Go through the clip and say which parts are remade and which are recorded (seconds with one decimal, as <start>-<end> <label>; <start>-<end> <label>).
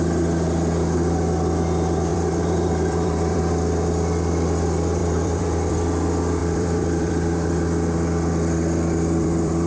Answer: 0.0-2.1 recorded; 2.1-3.4 remade; 3.4-5.0 recorded; 5.0-5.7 remade; 5.7-6.4 recorded; 6.4-9.7 remade